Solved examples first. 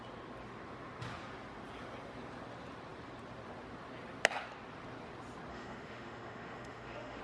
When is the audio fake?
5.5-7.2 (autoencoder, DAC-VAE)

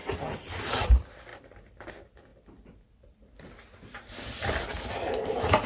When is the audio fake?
none

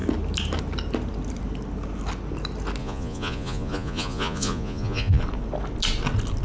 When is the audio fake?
2.8-5.2 (vocoder, Vocos)

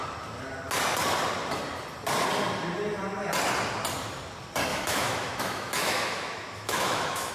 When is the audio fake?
4.7-7.3 (autoencoder, DAC-VAE)

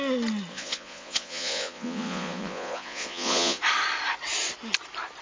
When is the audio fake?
0.5-3.6 (vocoder, Vocos)